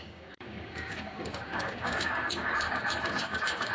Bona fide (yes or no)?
no